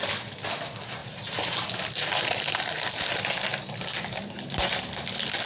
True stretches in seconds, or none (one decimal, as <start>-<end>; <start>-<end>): 0.0-1.0; 3.1-5.5